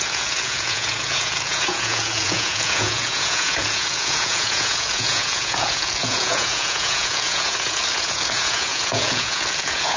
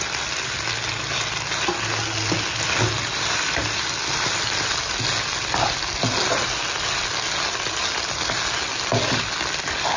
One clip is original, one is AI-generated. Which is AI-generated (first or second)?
first